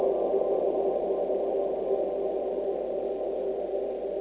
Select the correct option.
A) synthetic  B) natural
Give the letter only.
B